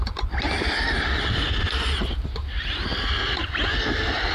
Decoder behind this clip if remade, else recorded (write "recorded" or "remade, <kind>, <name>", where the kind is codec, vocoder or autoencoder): recorded